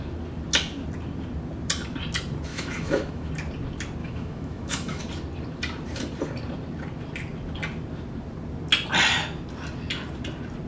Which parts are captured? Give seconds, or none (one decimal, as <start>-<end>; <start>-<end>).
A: 0.0-2.5; 3.3-4.0; 5.0-10.7